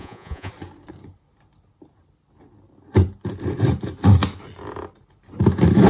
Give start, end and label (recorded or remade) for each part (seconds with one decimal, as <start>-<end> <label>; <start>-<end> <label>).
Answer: 0.0-0.5 remade; 0.5-5.9 recorded